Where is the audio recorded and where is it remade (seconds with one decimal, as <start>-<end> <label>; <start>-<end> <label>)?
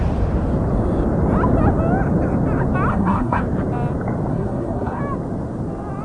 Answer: 0.0-2.9 recorded; 2.9-3.4 remade; 3.4-4.3 recorded; 4.3-5.0 remade; 5.0-6.0 recorded